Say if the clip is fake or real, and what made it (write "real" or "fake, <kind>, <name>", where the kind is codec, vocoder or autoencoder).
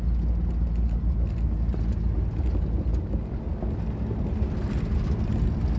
real